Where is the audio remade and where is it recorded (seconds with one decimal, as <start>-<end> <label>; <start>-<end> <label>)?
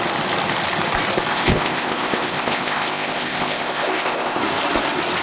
0.0-1.3 recorded; 1.3-4.4 remade; 4.4-5.2 recorded